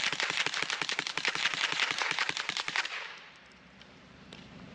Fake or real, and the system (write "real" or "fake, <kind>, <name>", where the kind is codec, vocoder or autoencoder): fake, vocoder, BigVGAN v2